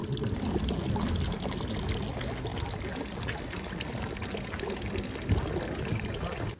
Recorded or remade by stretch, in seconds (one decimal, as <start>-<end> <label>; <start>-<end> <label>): 0.0-6.6 recorded